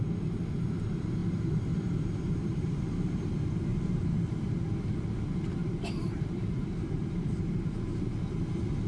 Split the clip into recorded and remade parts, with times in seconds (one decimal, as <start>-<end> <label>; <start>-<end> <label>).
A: 0.0-1.2 recorded; 1.2-3.2 remade; 3.2-3.7 recorded; 3.7-4.7 remade; 4.7-5.6 recorded; 5.6-7.7 remade; 7.7-8.9 recorded